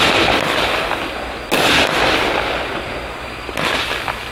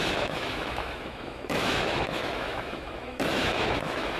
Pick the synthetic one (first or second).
second